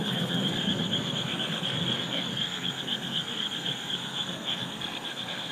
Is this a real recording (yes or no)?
no